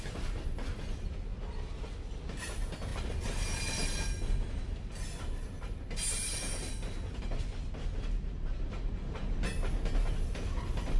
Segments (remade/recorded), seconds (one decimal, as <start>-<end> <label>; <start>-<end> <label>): 0.0-11.0 recorded